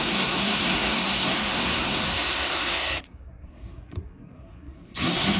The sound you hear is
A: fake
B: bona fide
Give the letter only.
A